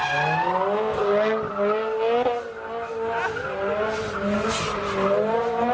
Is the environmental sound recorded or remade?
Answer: recorded